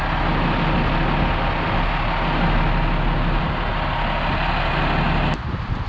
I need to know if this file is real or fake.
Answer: real